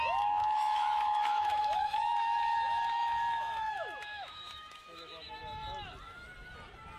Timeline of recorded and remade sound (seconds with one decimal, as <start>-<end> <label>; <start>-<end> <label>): 0.0-5.6 remade; 5.6-7.0 recorded